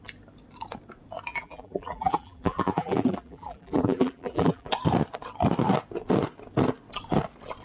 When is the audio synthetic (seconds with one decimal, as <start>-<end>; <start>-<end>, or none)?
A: 1.3-4.7